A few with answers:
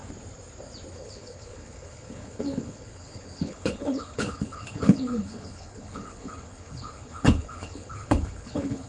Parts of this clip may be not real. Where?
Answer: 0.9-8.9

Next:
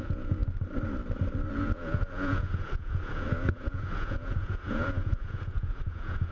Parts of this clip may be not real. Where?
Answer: 0.0-0.4; 1.5-6.3

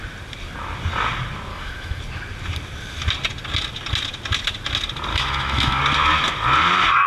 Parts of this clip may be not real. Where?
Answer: 1.5-2.0; 5.1-5.8

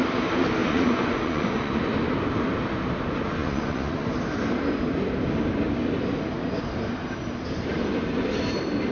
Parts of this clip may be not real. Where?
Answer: 0.6-1.8; 3.4-4.1

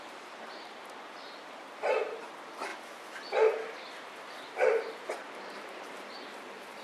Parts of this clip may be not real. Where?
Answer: 0.0-2.7; 4.5-6.8

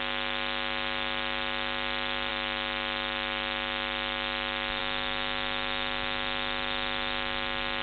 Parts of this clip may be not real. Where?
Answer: none